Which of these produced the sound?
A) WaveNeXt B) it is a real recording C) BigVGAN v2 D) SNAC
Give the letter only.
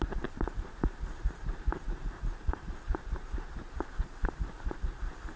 C